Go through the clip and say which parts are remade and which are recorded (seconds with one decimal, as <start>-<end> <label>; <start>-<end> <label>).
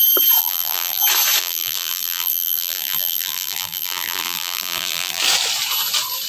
0.0-0.4 recorded; 0.4-1.0 remade; 1.0-1.4 recorded; 1.4-5.2 remade; 5.2-6.3 recorded